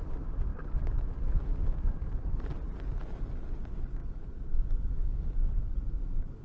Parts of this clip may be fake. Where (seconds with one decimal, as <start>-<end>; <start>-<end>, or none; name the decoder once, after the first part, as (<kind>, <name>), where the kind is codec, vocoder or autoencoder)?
4.0-4.5 (vocoder, Vocos)